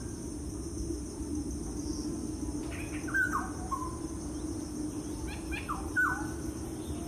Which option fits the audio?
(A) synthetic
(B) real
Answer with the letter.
B